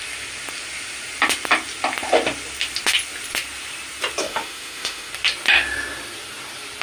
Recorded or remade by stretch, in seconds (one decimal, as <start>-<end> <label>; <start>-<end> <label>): 0.0-4.2 recorded; 4.2-5.1 remade; 5.1-6.8 recorded